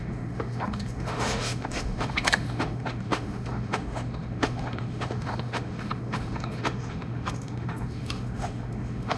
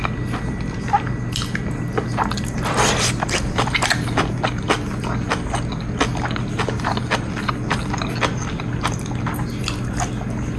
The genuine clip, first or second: second